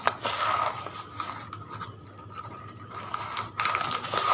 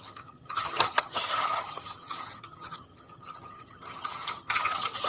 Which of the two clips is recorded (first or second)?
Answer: first